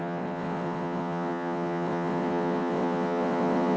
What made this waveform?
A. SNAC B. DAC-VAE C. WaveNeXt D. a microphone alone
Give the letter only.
C